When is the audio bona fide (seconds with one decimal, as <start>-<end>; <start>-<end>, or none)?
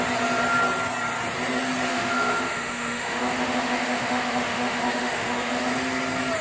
0.0-1.9; 5.7-6.4